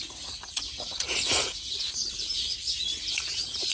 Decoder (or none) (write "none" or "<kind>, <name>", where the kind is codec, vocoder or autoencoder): vocoder, Vocos